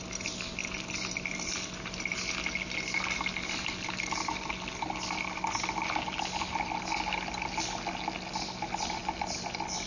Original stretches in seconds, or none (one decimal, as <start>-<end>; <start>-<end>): 0.0-9.9